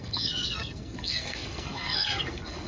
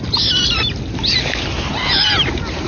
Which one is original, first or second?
second